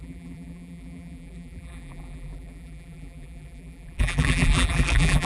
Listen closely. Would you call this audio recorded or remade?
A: remade